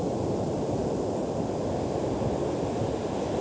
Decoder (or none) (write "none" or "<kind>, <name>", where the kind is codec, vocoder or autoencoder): none